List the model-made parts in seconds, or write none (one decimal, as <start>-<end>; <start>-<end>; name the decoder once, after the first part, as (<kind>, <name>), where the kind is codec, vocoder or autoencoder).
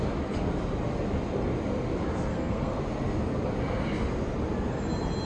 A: 2.3-2.8 (codec, SNAC)